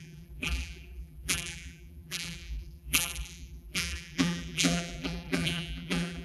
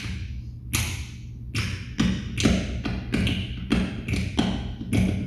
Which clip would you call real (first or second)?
second